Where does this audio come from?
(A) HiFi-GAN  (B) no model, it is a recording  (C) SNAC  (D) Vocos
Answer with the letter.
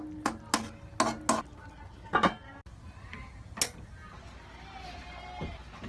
B